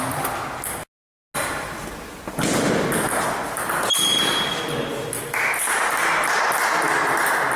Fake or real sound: real